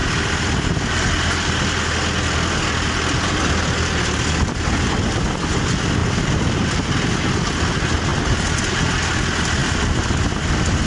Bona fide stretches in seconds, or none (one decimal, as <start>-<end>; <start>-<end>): 0.9-6.0; 6.9-9.6; 10.1-10.9